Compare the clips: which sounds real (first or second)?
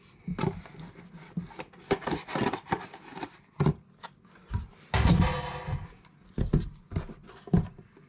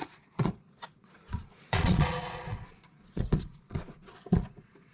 first